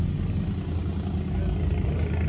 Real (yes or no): yes